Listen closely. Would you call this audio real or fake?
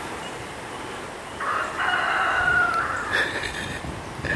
real